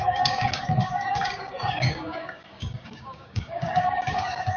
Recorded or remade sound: remade